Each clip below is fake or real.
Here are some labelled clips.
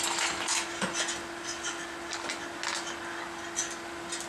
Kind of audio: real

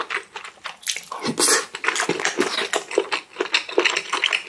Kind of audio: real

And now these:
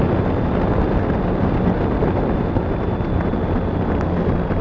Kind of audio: real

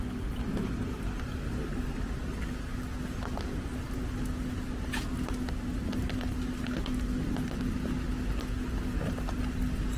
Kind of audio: real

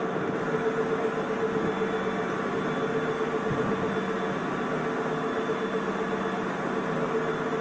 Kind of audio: real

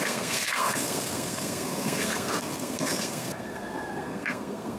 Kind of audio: fake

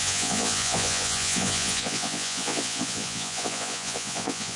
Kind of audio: fake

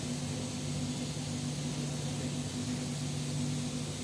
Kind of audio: real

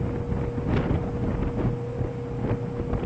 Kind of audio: real